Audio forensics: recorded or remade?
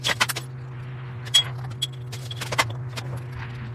recorded